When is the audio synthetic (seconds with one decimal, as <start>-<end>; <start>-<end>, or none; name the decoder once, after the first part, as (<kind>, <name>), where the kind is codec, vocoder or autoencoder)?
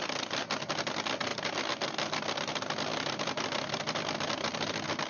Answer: none